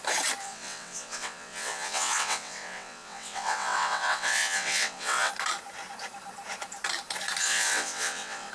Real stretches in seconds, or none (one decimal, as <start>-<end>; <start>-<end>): 0.0-0.4; 5.3-7.4